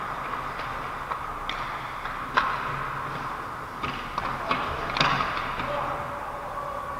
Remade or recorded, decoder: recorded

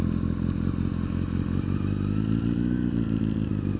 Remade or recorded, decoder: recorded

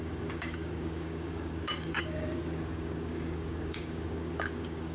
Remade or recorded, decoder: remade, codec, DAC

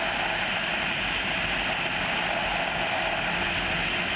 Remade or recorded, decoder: recorded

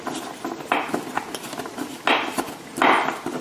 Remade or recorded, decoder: recorded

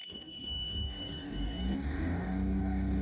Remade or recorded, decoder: remade, codec, DAC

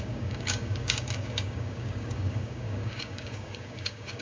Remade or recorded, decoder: remade, codec, DAC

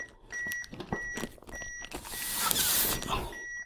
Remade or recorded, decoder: recorded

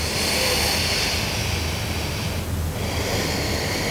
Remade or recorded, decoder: recorded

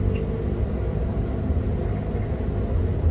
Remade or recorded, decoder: recorded